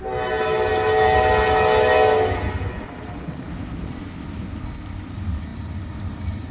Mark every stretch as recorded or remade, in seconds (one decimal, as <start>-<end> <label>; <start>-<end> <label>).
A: 0.0-5.5 recorded; 5.5-6.5 remade